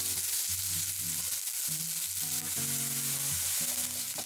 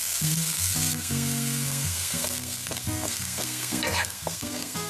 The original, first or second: first